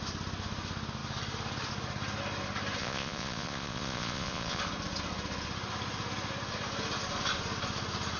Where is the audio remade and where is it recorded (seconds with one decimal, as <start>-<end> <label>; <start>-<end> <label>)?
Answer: 0.0-2.8 recorded; 2.8-4.6 remade; 4.6-8.2 recorded

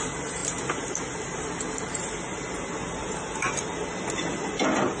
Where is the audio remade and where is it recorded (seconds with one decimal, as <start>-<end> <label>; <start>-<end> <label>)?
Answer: 0.0-5.0 recorded

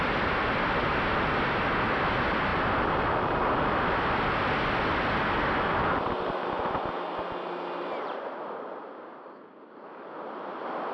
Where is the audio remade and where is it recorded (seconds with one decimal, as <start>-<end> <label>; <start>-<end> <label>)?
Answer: 0.0-10.9 recorded

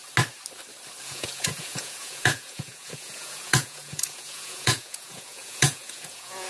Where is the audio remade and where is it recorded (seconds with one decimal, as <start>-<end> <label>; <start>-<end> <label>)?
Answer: 0.0-1.0 recorded; 1.0-6.5 remade

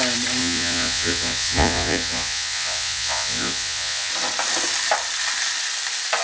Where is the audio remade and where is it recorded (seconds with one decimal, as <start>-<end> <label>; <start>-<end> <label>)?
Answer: 0.0-0.4 recorded; 0.4-4.1 remade; 4.1-6.2 recorded

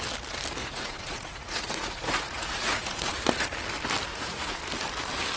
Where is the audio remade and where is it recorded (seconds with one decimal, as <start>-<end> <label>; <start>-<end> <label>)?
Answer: 0.0-0.6 recorded; 0.6-3.1 remade; 3.1-4.1 recorded; 4.1-4.6 remade; 4.6-5.4 recorded

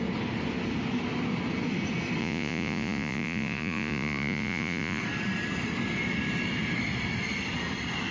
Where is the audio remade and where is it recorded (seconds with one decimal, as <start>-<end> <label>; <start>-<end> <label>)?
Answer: 0.0-2.2 recorded; 2.2-5.0 remade; 5.0-8.1 recorded